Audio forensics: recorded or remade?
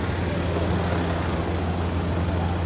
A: recorded